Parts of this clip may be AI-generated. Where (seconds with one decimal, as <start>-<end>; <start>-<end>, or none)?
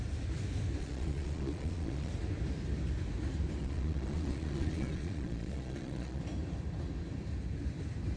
0.8-2.1; 3.6-6.2